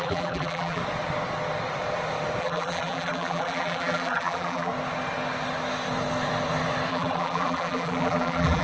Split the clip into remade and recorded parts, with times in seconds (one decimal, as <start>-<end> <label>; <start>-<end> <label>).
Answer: 0.0-0.8 remade; 0.8-2.4 recorded; 2.4-4.7 remade; 4.7-6.9 recorded; 6.9-8.6 remade